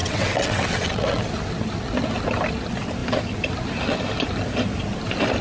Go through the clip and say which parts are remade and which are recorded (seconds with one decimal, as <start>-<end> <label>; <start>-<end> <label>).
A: 0.0-1.2 remade; 1.2-5.4 recorded